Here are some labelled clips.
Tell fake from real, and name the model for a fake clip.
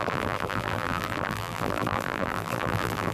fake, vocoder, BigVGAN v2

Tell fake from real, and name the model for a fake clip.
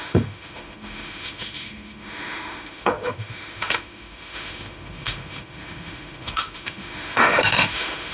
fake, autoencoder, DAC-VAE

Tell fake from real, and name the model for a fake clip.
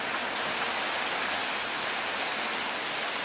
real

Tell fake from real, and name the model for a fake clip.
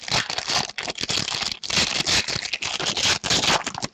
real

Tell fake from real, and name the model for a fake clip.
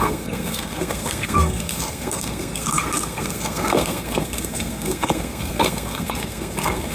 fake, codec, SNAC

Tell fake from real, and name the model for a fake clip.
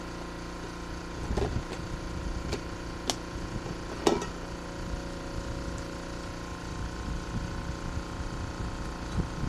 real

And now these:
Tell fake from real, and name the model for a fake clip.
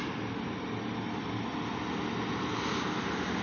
real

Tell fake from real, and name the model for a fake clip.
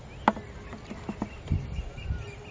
real